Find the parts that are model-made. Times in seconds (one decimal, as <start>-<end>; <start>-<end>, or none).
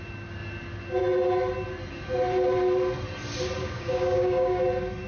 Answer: 3.6-4.6